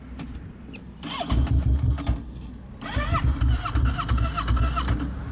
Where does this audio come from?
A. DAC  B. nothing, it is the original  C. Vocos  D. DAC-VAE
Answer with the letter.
B